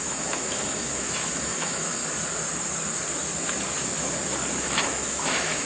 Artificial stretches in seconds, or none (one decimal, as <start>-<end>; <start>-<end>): 0.0-2.0; 4.6-5.7